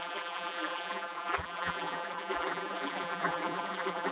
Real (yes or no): no